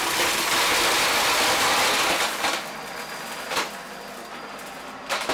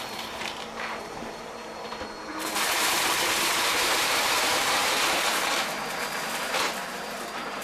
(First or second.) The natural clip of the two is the first